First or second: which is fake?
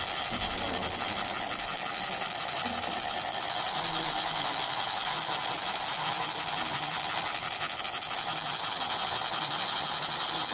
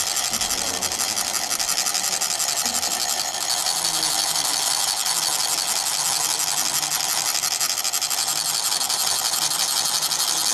first